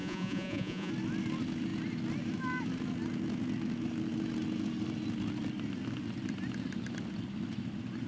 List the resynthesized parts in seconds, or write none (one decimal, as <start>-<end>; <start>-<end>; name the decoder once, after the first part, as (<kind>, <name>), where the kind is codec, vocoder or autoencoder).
0.0-0.9 (vocoder, Vocos)